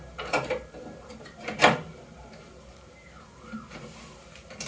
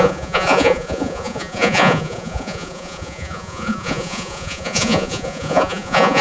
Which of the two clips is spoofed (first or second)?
second